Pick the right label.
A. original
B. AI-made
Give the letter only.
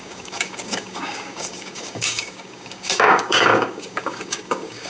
B